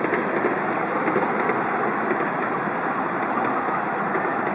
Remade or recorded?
recorded